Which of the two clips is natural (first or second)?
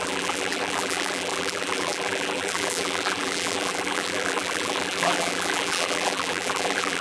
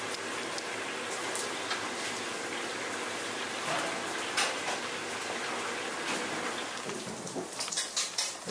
second